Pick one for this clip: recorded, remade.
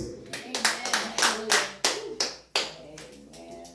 recorded